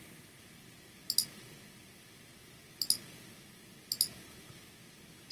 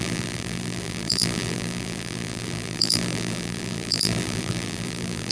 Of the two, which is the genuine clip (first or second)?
first